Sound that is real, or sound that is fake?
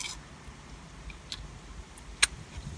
real